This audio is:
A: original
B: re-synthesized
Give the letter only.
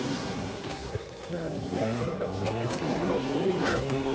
B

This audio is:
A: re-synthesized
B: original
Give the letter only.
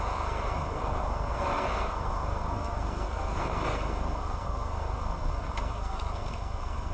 A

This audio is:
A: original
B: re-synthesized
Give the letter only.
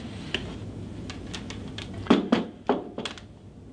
A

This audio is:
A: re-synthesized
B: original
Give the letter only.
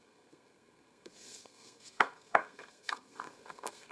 A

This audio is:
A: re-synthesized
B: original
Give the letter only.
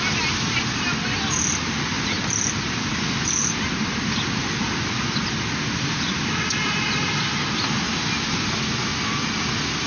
B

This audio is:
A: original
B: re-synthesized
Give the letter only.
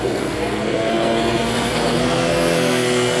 B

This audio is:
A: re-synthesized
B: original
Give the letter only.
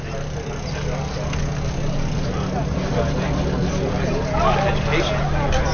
B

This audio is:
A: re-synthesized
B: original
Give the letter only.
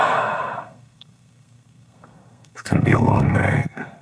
A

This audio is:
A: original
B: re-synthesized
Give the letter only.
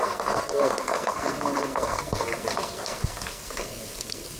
B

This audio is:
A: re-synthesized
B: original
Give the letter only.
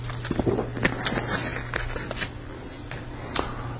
B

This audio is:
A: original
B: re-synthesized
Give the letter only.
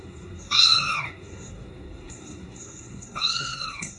B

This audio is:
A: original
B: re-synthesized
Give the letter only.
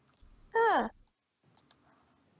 A